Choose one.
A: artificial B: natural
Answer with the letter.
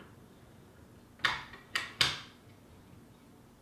B